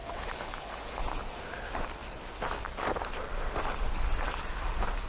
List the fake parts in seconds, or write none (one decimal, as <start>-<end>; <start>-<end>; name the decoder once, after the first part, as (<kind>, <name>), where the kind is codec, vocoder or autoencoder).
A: 0.0-1.0 (codec, HILCodec)